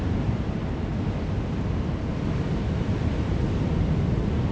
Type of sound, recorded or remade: recorded